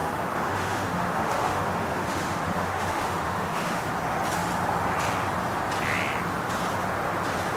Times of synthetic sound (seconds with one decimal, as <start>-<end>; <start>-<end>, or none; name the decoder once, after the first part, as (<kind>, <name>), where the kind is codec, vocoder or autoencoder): 0.0-3.9 (autoencoder, DAC-VAE)